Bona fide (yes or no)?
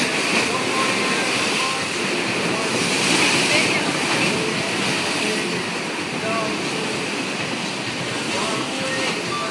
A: yes